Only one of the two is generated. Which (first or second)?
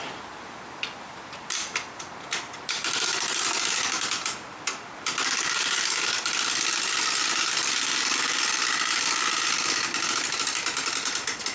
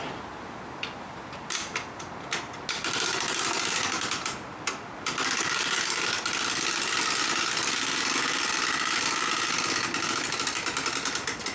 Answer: first